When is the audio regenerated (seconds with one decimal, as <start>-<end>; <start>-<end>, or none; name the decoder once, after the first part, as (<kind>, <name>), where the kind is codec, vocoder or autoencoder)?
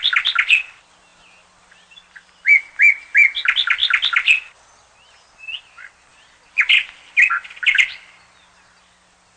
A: none